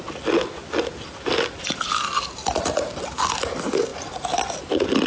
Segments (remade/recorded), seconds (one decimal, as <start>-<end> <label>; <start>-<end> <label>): 0.0-5.1 recorded